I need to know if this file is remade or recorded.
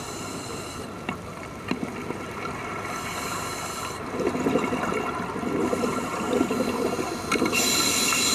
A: recorded